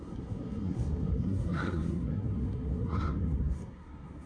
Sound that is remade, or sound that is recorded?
remade